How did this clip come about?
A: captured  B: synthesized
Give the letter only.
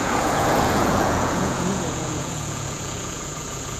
B